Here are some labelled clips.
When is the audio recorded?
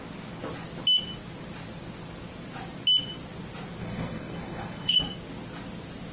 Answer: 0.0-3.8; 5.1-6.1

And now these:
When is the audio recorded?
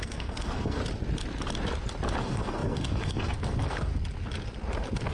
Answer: 0.8-2.2; 3.9-5.1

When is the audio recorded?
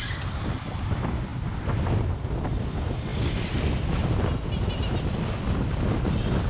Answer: 0.0-6.5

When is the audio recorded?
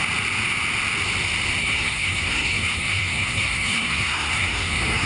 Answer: 0.0-1.6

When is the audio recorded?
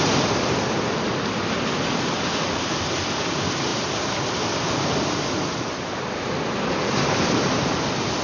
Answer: 0.0-8.2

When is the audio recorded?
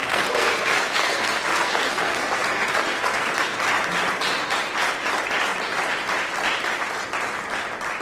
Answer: 3.6-8.0